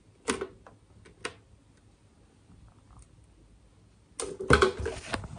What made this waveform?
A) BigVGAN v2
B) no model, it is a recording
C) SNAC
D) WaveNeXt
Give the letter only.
B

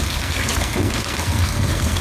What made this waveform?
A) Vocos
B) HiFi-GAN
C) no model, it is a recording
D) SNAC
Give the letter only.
D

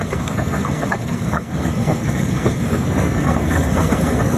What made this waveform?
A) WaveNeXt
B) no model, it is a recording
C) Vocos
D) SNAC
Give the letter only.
D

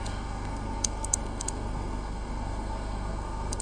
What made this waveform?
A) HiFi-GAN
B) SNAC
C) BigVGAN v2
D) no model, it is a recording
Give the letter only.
B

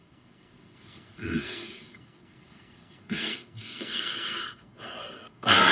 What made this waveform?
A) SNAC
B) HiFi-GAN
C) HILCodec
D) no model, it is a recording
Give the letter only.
A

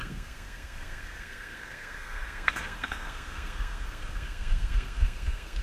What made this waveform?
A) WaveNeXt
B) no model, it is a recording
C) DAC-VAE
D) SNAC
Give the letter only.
D